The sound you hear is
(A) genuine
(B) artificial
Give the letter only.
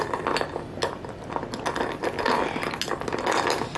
A